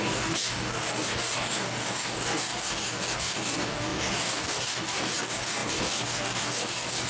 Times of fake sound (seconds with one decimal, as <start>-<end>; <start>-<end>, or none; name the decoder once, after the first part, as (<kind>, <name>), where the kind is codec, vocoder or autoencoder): 0.0-7.1 (codec, DAC)